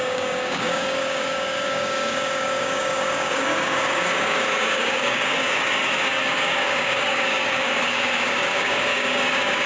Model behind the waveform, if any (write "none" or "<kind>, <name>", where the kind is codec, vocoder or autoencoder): codec, DAC